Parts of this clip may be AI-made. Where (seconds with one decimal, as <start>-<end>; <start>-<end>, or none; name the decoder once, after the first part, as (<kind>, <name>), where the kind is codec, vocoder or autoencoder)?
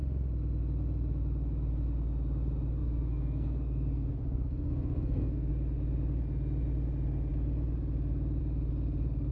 2.8-5.5 (codec, SNAC)